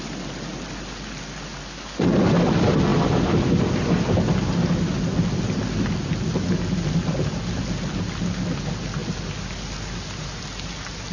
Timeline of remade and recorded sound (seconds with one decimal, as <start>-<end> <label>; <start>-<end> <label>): 0.0-11.1 recorded